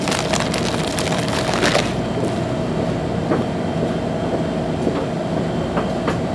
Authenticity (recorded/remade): recorded